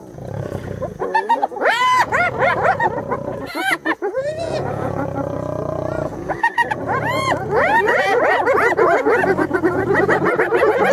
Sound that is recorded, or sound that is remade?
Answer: remade